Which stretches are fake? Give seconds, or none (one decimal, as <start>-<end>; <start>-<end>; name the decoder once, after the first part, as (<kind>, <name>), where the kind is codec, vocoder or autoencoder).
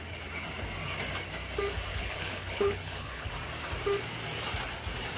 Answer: 1.9-3.3 (codec, HILCodec)